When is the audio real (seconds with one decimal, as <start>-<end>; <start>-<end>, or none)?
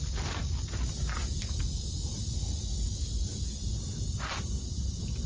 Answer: 0.0-5.3